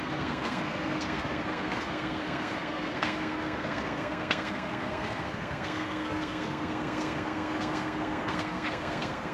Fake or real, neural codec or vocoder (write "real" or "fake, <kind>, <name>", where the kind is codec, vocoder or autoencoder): fake, codec, SNAC